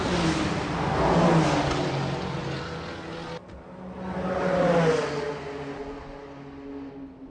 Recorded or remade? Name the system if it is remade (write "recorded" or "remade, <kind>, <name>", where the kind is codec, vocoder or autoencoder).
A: recorded